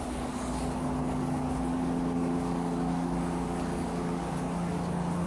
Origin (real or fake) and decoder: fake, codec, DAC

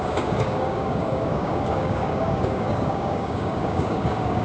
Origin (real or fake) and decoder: fake, codec, DAC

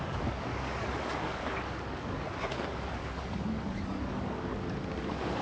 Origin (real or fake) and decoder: fake, codec, DAC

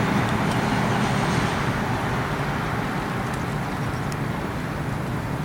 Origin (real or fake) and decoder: real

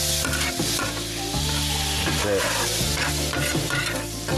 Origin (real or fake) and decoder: real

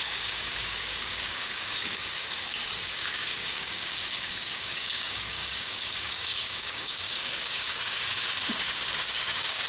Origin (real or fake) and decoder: fake, codec, DAC